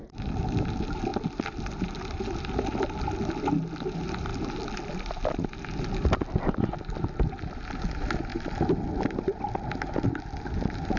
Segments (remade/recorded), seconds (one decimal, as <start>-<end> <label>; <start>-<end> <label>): 0.0-11.0 recorded